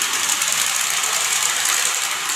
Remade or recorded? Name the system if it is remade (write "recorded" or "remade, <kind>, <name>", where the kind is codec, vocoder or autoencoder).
recorded